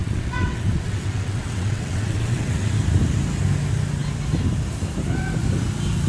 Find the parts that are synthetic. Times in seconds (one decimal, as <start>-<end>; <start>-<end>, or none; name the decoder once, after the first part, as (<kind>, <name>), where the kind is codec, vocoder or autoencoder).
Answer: 0.0-2.7 (vocoder, WaveNeXt)